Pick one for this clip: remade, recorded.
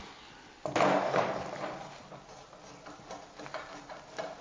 recorded